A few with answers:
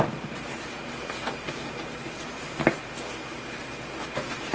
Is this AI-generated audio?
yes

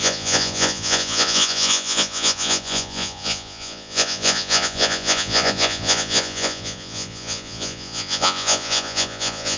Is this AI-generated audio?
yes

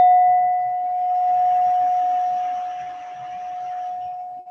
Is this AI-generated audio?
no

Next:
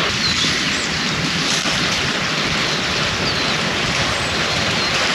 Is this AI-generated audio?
no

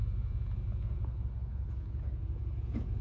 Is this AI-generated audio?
yes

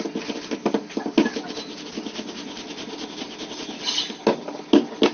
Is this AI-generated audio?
no